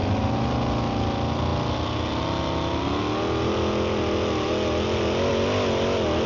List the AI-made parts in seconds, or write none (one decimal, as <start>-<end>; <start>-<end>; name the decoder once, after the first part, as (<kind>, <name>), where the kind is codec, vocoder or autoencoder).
none